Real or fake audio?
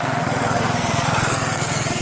fake